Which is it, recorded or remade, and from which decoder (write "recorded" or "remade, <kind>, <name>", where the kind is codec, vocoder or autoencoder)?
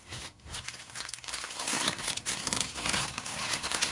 remade, codec, SNAC